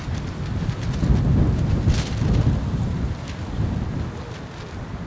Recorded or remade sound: recorded